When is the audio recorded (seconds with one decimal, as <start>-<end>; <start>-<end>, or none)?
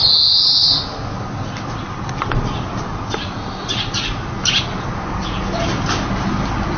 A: 0.0-6.8